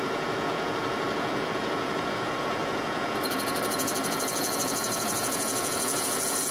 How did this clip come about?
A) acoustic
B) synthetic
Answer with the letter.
B